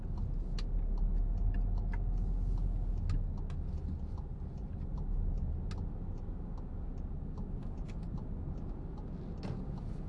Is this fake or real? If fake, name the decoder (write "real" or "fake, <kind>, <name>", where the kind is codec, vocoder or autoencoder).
real